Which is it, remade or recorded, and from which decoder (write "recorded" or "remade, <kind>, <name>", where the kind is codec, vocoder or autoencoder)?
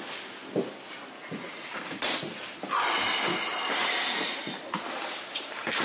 recorded